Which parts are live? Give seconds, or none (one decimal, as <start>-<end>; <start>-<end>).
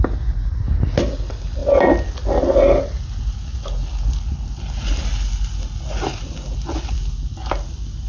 0.0-8.1